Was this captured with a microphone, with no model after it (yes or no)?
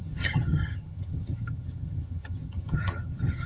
no